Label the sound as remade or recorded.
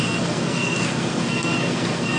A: remade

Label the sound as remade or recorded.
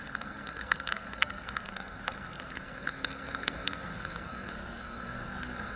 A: remade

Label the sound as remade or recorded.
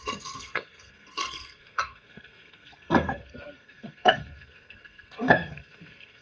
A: remade